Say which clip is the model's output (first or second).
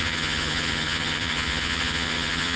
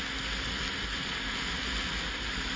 first